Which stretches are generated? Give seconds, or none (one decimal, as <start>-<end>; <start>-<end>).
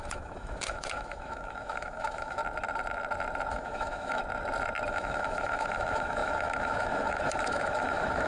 0.0-2.4; 3.5-4.2; 4.9-8.3